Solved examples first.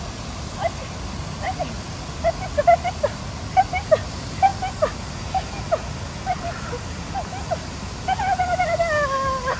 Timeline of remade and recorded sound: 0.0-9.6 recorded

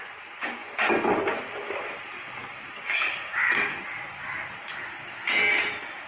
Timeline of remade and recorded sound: 0.0-6.1 recorded

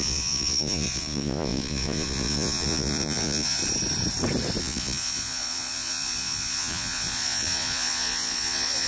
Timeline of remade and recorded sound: 0.0-3.6 remade; 3.6-4.6 recorded; 4.6-8.9 remade

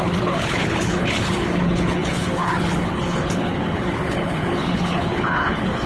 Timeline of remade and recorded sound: 0.0-5.9 remade

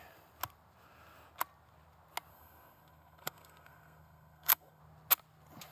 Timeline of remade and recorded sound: 0.0-2.3 recorded; 2.3-4.8 remade; 4.8-5.7 recorded

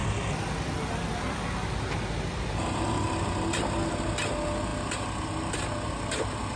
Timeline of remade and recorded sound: 0.0-6.6 recorded